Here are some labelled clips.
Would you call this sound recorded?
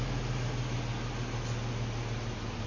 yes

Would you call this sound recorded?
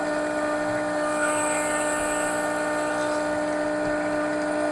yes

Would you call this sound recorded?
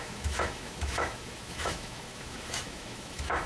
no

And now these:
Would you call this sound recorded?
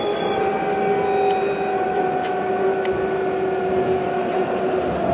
yes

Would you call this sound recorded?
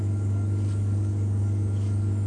no